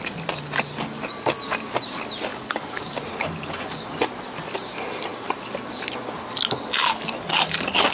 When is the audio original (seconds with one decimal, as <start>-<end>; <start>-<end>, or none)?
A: 0.0-2.3; 2.9-7.9